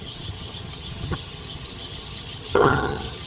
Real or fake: fake